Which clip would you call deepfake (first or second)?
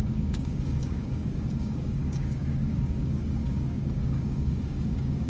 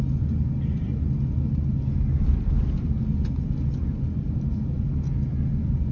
first